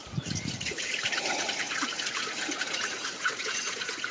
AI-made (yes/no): yes